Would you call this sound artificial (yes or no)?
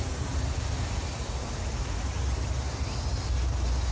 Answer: no